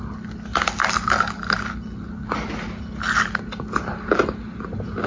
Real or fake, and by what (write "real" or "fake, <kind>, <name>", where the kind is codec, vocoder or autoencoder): real